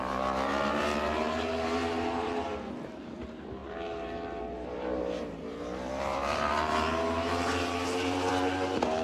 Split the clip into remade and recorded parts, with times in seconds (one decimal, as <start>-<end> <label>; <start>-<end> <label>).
0.0-9.0 remade